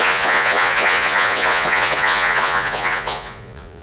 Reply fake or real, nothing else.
fake